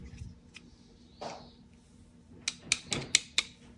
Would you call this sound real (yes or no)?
yes